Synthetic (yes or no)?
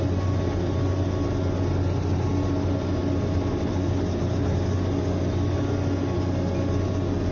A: no